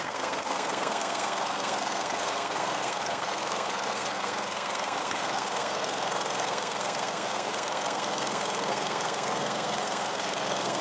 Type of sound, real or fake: fake